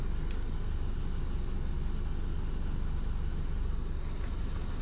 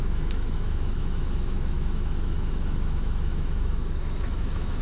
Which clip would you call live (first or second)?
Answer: first